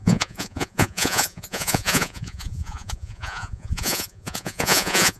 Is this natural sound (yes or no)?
no